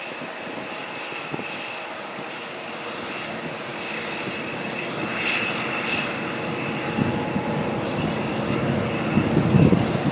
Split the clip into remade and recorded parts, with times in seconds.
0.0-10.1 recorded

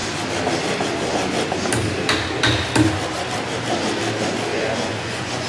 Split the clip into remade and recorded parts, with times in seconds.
0.0-4.5 recorded; 4.5-5.5 remade

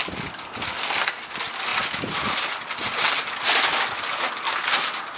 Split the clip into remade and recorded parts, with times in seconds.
0.0-5.2 recorded